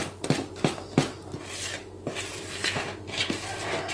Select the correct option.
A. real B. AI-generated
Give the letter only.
A